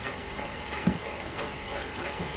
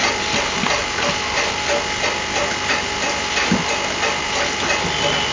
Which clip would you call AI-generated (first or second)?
first